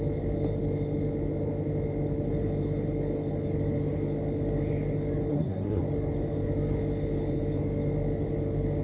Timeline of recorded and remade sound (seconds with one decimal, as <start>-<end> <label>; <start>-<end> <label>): 0.0-5.3 recorded; 5.3-5.8 remade; 5.8-8.8 recorded

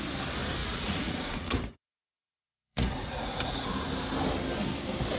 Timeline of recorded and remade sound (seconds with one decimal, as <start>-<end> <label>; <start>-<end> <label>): 0.0-0.6 recorded; 0.6-3.7 remade; 3.7-5.2 recorded

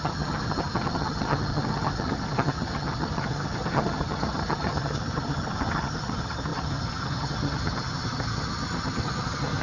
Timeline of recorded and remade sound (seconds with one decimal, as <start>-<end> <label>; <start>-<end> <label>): 0.0-9.6 remade